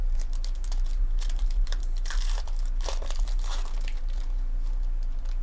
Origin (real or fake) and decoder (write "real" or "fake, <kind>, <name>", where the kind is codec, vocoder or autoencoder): fake, vocoder, BigVGAN v2